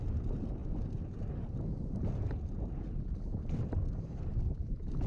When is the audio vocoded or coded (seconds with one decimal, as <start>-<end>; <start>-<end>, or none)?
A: none